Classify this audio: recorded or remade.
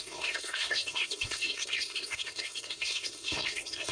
remade